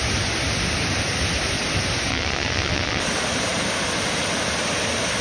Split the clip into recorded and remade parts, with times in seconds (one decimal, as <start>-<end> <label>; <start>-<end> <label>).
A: 0.0-2.1 recorded; 2.1-3.0 remade; 3.0-5.2 recorded